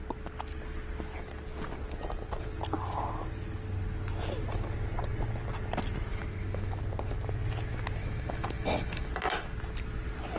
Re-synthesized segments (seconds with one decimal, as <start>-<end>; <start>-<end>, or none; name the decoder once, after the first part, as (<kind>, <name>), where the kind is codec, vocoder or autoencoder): 6.1-6.8 (autoencoder, DAC-VAE); 8.0-9.1